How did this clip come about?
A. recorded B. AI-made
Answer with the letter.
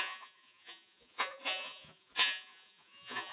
B